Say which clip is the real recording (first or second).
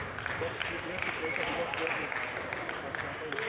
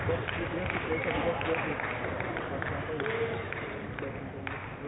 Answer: first